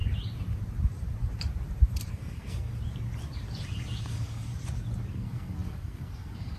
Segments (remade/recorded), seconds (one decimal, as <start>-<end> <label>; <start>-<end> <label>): 0.0-2.1 recorded; 2.1-2.7 remade; 2.7-4.0 recorded; 4.0-4.5 remade; 4.5-5.1 recorded; 5.1-6.6 remade